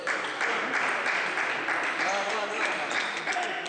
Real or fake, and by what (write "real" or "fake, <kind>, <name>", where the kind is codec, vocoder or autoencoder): fake, vocoder, BigVGAN v2